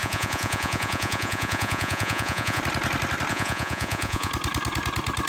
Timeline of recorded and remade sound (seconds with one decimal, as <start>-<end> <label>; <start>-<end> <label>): 0.0-2.6 remade; 2.6-3.3 recorded; 3.3-4.3 remade; 4.3-5.3 recorded